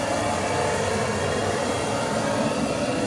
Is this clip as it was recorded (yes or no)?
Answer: yes